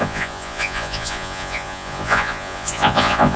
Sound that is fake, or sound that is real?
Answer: fake